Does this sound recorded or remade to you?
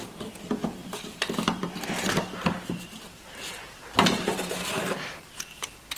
recorded